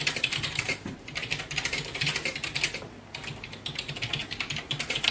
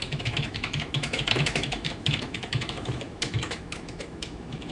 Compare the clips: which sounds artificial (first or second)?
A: second